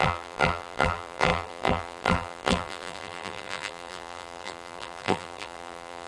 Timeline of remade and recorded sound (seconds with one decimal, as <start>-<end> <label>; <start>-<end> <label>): 0.0-6.1 remade